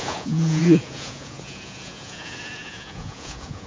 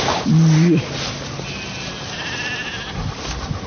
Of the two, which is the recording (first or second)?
second